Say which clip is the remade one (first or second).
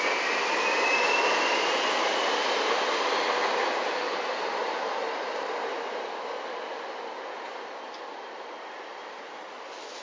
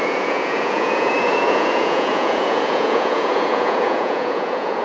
second